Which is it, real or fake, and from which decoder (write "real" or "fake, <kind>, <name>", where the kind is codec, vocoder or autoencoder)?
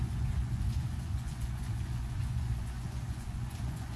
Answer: fake, vocoder, Vocos